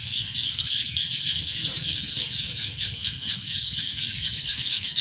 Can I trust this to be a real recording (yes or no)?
no